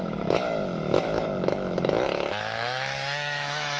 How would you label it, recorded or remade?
remade